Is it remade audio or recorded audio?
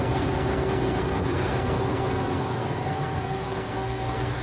remade